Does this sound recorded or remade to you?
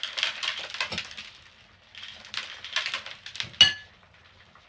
recorded